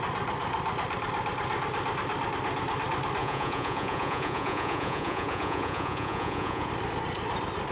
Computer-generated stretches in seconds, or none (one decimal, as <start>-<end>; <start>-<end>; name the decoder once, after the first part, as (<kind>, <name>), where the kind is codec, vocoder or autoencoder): 3.2-6.7 (vocoder, Vocos)